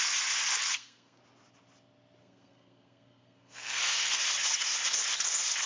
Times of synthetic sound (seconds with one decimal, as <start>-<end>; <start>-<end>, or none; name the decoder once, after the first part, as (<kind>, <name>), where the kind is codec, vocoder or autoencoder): 0.7-1.2 (codec, SNAC); 2.2-4.2